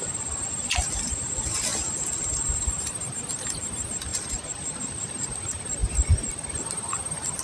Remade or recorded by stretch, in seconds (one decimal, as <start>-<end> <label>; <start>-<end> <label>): 0.0-1.7 remade; 1.7-2.5 recorded; 2.5-4.1 remade; 4.1-4.7 recorded; 4.7-5.8 remade; 5.8-6.3 recorded; 6.3-7.4 remade